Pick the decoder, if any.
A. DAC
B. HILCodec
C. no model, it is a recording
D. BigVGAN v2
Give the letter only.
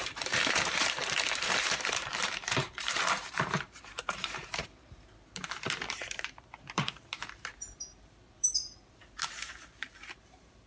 D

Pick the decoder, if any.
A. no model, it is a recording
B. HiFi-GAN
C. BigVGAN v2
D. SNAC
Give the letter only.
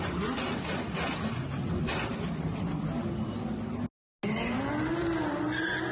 A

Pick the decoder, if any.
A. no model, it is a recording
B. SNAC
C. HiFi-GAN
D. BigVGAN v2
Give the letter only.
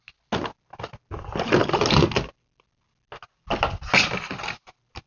A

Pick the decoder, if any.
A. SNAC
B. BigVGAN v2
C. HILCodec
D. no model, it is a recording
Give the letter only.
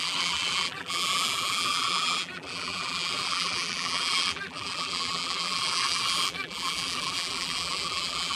B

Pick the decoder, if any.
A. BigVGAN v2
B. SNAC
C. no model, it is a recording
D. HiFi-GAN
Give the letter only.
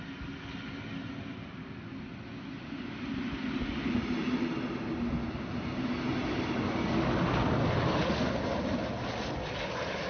C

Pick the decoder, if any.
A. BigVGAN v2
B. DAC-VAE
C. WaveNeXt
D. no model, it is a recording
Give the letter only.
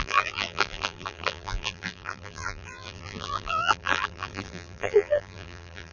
A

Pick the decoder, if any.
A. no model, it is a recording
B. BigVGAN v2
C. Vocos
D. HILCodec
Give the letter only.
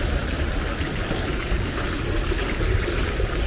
B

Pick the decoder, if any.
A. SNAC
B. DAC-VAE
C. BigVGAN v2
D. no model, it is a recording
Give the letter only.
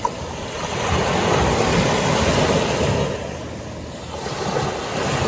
D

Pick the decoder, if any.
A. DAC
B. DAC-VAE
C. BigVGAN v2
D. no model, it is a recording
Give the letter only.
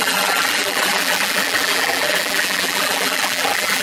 C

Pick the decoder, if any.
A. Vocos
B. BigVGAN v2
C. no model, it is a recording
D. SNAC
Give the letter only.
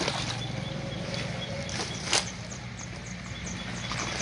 C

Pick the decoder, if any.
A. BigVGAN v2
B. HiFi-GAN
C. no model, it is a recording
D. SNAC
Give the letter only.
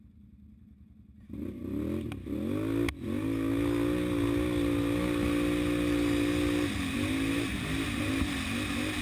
C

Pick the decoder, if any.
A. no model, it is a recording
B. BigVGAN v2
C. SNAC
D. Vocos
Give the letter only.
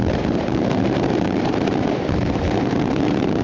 B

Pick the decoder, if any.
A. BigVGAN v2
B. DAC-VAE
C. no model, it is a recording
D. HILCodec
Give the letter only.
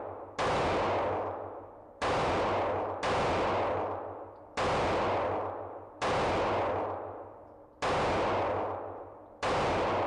C